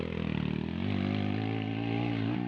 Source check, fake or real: real